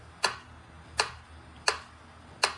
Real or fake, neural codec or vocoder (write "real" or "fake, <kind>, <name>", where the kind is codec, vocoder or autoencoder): real